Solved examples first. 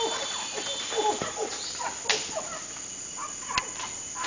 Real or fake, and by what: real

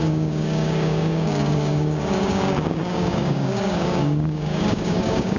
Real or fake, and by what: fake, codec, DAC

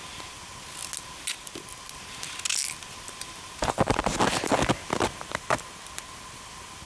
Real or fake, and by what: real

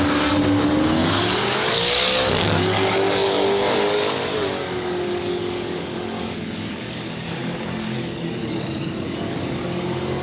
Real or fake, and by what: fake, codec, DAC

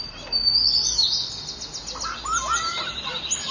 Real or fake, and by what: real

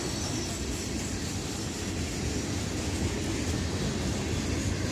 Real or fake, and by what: real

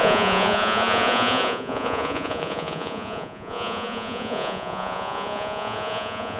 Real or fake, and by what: fake, vocoder, Vocos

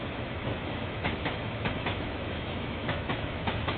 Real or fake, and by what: fake, autoencoder, DAC-VAE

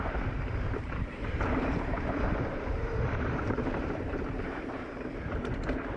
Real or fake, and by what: fake, vocoder, BigVGAN v2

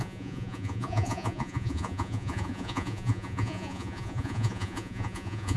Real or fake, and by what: fake, vocoder, Vocos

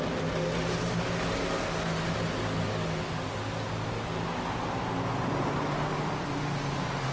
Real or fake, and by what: real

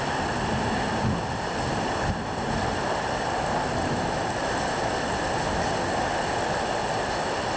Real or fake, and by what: real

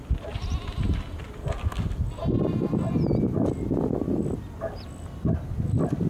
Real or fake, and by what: real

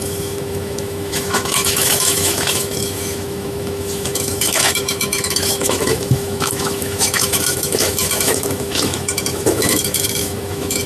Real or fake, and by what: fake, autoencoder, DAC-VAE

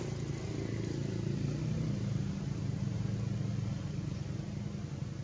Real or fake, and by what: real